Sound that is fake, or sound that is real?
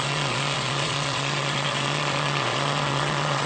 fake